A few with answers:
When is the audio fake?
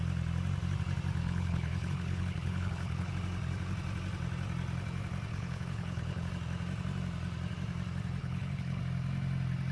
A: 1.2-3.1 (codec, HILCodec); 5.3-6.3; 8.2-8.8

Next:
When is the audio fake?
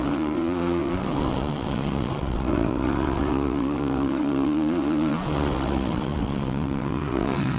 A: 0.0-7.6 (vocoder, WaveNeXt)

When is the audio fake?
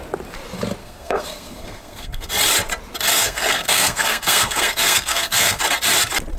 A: 0.8-2.3 (codec, SNAC); 3.1-5.6